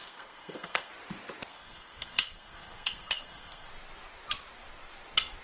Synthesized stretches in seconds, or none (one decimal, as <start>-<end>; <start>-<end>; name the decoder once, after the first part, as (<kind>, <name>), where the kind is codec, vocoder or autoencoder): 0.0-0.9 (codec, SNAC); 1.5-3.7